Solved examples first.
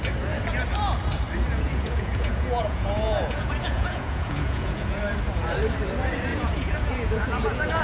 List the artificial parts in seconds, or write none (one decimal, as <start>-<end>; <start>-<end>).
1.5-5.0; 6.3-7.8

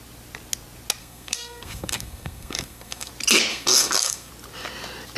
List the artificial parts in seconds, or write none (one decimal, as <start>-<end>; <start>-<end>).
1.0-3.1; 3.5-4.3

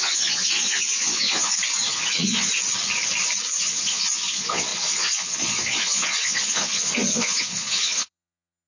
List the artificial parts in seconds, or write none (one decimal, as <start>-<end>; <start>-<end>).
0.0-1.5; 2.1-2.5; 3.6-8.7